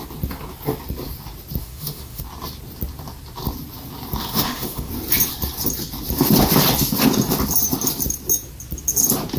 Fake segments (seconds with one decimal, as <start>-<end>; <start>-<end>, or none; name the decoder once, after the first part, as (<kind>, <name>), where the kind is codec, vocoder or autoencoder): 1.6-2.2 (autoencoder, DAC-VAE); 4.2-4.9